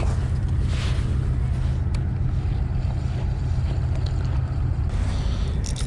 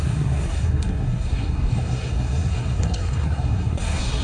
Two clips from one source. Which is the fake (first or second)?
second